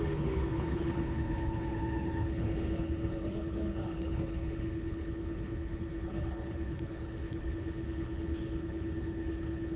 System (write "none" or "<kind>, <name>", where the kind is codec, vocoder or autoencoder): codec, HILCodec